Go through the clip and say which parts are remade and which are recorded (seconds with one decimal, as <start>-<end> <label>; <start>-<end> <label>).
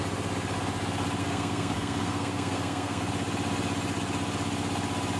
0.0-1.2 recorded; 1.2-3.1 remade; 3.1-5.2 recorded